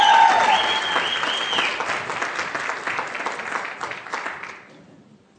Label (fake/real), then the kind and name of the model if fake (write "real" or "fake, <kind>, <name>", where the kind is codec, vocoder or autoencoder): real